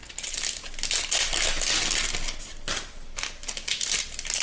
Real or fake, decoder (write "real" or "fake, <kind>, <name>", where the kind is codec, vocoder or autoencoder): real